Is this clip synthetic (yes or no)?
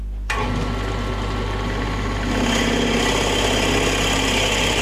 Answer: no